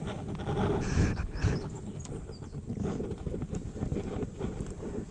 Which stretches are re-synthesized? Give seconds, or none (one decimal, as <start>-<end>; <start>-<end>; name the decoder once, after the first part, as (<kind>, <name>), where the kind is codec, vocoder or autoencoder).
1.0-2.0 (codec, HILCodec)